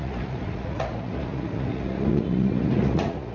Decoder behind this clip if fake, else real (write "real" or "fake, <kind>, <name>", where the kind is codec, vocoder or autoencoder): fake, vocoder, Vocos